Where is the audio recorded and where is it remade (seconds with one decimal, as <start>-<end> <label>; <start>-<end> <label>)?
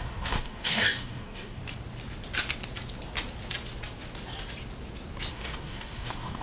0.0-1.6 remade; 1.6-5.3 recorded; 5.3-6.4 remade